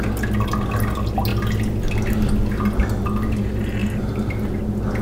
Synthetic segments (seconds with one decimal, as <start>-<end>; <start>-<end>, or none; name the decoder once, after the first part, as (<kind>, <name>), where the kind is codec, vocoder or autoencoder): 3.8-4.6 (vocoder, BigVGAN v2)